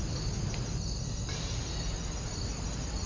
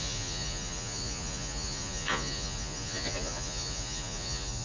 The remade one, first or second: second